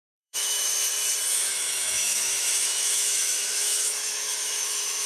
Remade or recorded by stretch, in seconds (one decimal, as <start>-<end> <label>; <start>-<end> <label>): 0.0-0.7 remade; 0.7-1.3 recorded; 1.3-5.1 remade